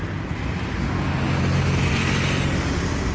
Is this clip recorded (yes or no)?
yes